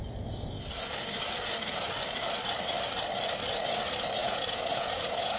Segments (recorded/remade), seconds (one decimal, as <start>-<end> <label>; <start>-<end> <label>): 0.0-4.2 recorded; 4.2-5.4 remade